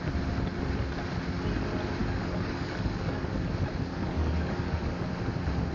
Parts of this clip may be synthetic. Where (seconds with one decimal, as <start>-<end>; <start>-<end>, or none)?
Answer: 2.0-3.5; 3.9-5.1